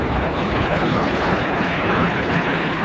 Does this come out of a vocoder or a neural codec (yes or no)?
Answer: yes